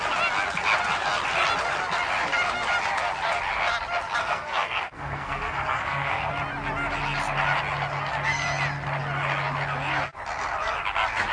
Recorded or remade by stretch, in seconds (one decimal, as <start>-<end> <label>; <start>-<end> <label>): 0.0-4.2 recorded; 4.2-6.3 remade; 6.3-11.3 recorded